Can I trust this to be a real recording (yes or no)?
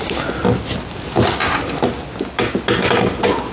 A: yes